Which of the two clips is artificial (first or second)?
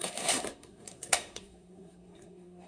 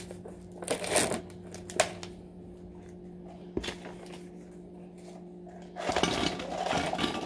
first